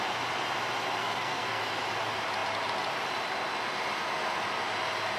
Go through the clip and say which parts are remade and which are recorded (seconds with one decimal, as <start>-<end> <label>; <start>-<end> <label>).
0.0-1.0 recorded; 1.0-1.6 remade; 1.6-5.2 recorded